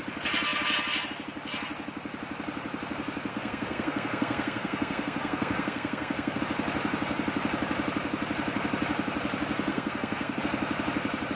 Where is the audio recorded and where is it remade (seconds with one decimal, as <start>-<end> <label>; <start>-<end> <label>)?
0.0-3.3 recorded; 3.3-6.4 remade; 6.4-9.7 recorded; 9.7-10.4 remade; 10.4-11.4 recorded